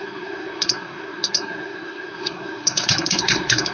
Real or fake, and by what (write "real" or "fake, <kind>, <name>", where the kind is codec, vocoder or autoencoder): fake, codec, SNAC